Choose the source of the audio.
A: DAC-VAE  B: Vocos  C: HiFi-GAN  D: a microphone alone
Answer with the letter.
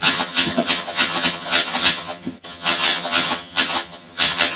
C